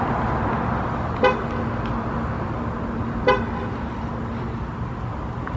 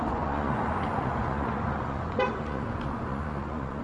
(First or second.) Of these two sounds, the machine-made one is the second